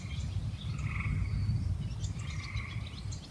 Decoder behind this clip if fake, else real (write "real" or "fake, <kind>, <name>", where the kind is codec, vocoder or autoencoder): real